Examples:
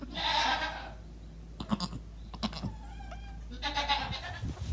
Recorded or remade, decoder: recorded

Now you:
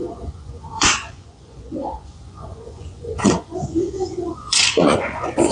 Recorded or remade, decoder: remade, vocoder, Vocos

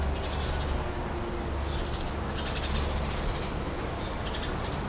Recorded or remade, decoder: recorded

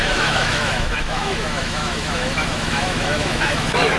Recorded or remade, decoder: remade, autoencoder, DAC-VAE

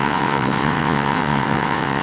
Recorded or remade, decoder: remade, vocoder, WaveNeXt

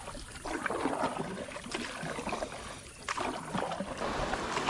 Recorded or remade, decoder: recorded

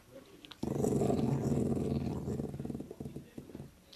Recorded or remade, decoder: recorded